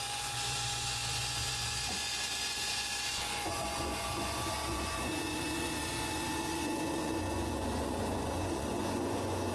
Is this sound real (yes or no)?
no